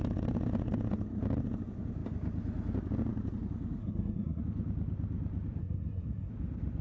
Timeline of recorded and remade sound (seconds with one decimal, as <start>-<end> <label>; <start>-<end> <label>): 0.0-3.8 recorded; 3.8-4.4 remade; 4.4-5.6 recorded; 5.6-6.3 remade; 6.3-6.8 recorded